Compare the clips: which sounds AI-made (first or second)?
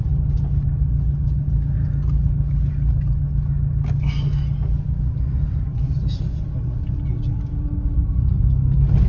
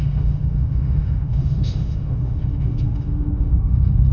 second